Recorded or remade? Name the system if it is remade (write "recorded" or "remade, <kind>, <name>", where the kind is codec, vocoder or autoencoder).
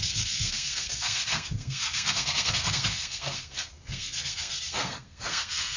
remade, codec, SNAC